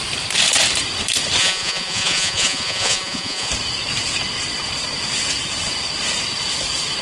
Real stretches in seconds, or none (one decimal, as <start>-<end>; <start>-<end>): 0.0-1.4; 3.5-7.0